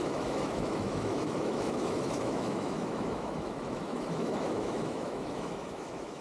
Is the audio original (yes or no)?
no